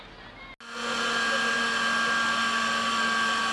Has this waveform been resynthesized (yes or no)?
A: no